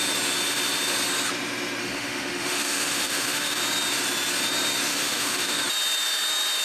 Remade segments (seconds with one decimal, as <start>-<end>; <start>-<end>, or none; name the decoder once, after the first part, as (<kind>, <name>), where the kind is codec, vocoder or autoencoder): 1.8-3.6 (autoencoder, DAC-VAE); 4.9-5.6